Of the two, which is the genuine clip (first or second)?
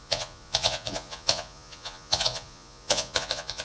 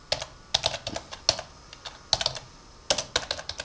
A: second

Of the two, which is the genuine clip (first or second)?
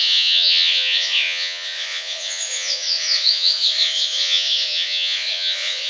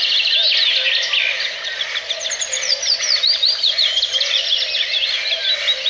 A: second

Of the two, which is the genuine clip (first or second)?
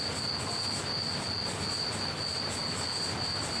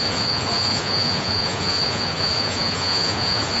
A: first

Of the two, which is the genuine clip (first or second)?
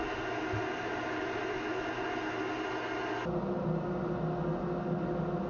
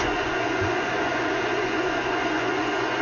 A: first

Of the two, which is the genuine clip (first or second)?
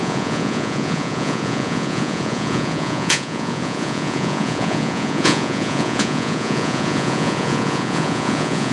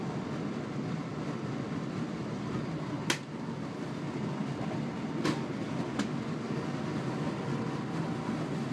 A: second